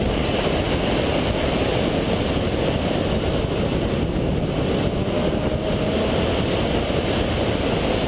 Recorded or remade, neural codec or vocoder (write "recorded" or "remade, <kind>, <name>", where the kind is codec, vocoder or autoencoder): recorded